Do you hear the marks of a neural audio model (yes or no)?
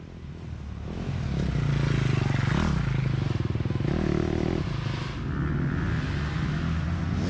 no